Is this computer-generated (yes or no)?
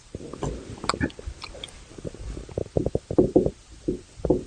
no